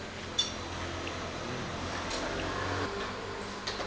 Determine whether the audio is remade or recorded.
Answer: recorded